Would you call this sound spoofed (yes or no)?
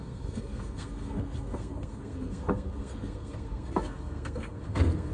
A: yes